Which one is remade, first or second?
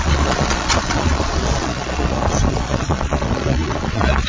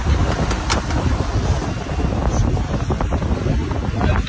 first